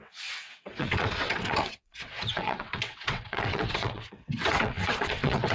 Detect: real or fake fake